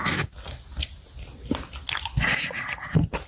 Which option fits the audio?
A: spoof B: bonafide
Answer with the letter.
B